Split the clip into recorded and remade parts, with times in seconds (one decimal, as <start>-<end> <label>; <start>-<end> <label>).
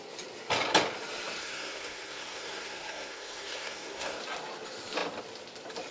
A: 0.0-1.4 recorded; 1.4-4.2 remade; 4.2-5.9 recorded